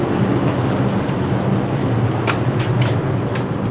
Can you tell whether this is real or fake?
real